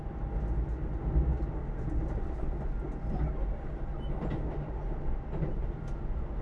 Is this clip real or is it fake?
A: real